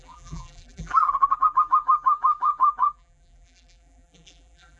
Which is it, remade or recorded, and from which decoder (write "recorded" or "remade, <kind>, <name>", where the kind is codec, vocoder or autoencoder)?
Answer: remade, vocoder, BigVGAN v2